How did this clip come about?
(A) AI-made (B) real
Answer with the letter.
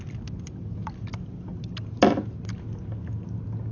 B